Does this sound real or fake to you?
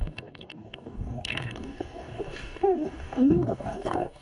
fake